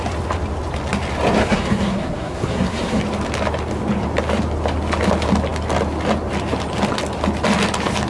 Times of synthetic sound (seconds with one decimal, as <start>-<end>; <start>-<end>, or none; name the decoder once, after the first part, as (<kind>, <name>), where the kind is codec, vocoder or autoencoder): 1.4-3.0 (codec, SNAC)